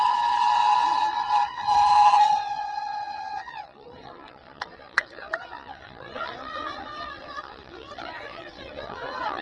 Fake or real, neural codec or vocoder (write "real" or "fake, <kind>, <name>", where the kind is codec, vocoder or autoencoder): fake, vocoder, WaveNeXt